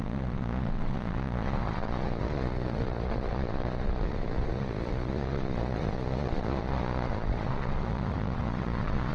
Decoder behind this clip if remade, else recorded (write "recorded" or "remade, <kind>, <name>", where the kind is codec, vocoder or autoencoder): remade, vocoder, Vocos